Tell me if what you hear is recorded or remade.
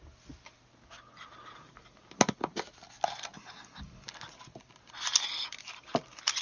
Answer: recorded